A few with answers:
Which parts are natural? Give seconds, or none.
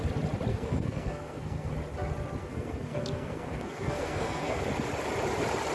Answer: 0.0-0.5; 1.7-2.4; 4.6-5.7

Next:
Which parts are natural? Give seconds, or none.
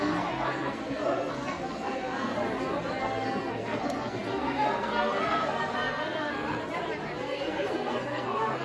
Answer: 2.3-3.0; 6.6-7.2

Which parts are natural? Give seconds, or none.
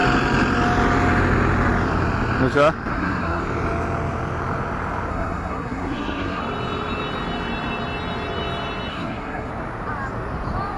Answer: 0.0-2.9; 3.4-5.1; 6.4-8.9; 9.5-10.8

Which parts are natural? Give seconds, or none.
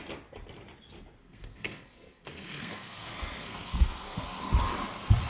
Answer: 0.0-1.2; 4.4-5.3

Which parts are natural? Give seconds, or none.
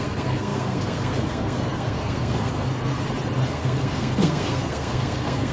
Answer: 2.9-3.5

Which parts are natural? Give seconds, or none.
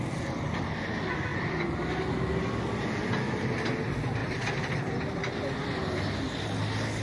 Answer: 0.0-7.0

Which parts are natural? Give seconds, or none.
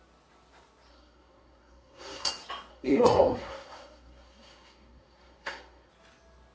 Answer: 0.0-0.9; 2.3-2.7; 5.9-6.5